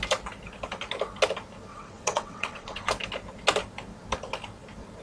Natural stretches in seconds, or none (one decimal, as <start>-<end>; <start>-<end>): 0.0-1.7; 2.9-5.0